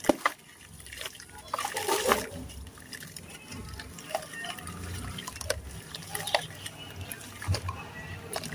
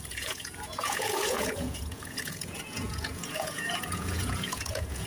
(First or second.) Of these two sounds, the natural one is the first